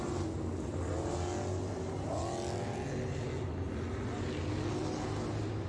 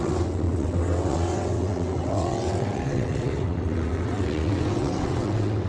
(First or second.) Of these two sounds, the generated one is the second